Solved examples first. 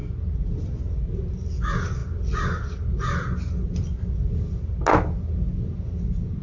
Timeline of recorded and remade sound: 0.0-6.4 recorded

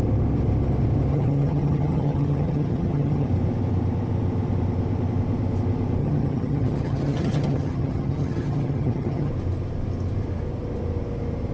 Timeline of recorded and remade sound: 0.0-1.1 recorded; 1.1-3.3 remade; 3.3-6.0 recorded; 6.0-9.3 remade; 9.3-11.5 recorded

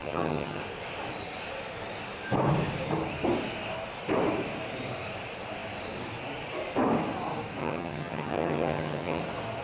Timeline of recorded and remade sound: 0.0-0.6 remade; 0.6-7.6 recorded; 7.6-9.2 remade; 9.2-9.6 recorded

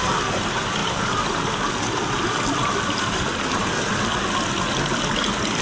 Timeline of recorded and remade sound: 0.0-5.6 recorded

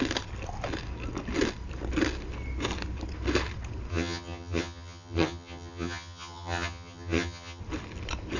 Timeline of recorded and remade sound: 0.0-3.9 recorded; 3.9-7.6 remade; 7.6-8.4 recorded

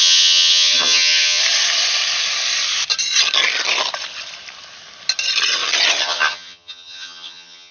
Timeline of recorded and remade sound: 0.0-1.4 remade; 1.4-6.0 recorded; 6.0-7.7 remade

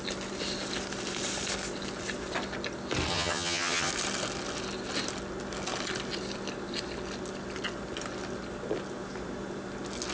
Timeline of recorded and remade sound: 0.0-3.1 recorded; 3.1-3.9 remade; 3.9-10.1 recorded

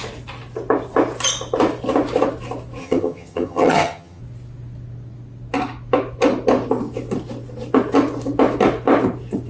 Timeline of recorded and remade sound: 0.0-2.8 recorded; 2.8-4.2 remade; 4.2-9.5 recorded